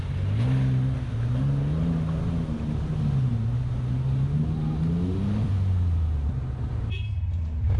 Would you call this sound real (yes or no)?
yes